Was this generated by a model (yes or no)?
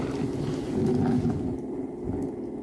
no